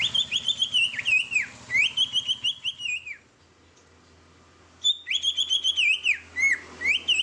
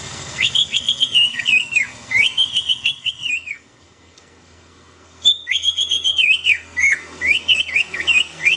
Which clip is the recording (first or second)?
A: first